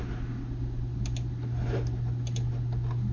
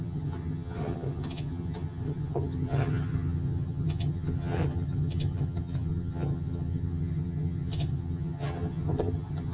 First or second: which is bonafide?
first